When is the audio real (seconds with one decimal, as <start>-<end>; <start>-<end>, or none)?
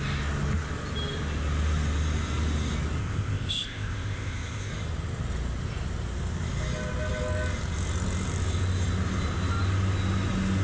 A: 0.0-3.0; 4.7-10.6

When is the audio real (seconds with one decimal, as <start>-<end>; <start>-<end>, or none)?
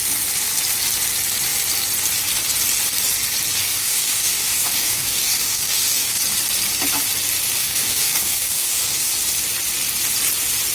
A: 0.0-3.6; 6.2-7.6; 9.1-10.7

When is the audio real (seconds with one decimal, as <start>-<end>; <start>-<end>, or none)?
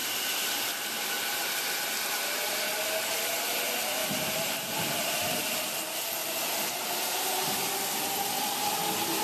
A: 0.0-4.0; 5.7-6.2; 7.7-9.2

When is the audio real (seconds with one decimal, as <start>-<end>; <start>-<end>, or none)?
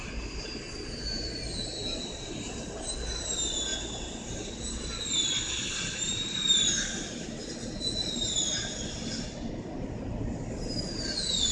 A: 0.0-5.6; 6.1-11.5